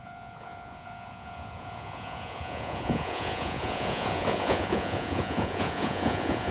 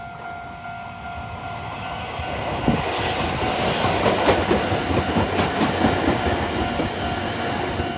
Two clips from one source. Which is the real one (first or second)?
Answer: second